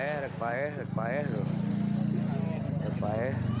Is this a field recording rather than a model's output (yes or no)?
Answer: yes